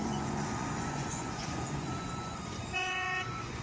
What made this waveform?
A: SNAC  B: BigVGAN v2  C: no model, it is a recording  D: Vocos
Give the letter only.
D